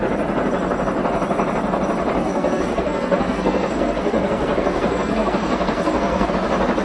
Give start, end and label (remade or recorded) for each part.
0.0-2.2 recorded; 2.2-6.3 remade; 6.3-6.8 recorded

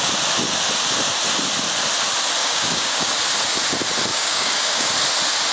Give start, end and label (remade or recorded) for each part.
0.0-2.4 recorded; 2.4-3.1 remade; 3.1-4.1 recorded; 4.1-4.9 remade; 4.9-5.5 recorded

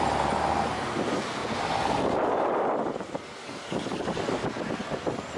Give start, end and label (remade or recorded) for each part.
0.0-3.4 recorded; 3.4-4.4 remade; 4.4-5.4 recorded

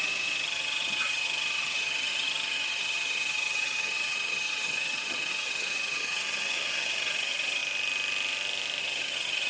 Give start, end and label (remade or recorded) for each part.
0.0-7.6 remade; 7.6-8.8 recorded; 8.8-9.5 remade